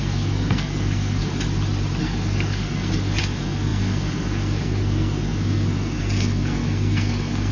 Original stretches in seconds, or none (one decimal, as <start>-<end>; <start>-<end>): 1.3-2.0